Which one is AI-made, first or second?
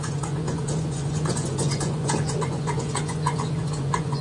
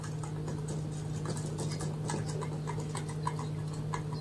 first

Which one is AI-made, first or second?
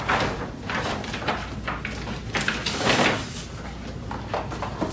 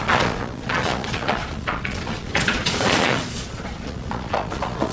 second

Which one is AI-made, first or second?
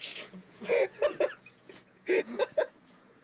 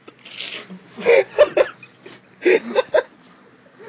first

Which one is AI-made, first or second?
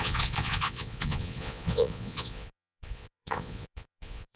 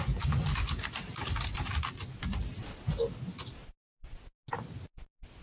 first